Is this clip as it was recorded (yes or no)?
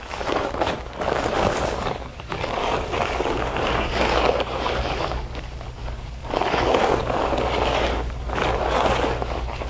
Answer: no